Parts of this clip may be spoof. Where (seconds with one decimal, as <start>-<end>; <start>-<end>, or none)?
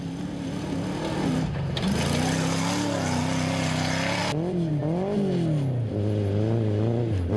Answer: none